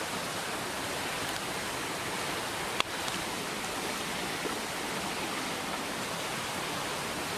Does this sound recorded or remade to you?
recorded